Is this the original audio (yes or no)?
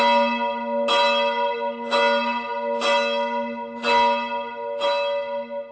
yes